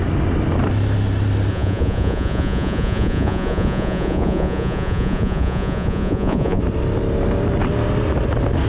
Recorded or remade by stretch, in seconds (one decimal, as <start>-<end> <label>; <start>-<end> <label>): 0.0-1.5 recorded; 1.5-6.6 remade; 6.6-8.7 recorded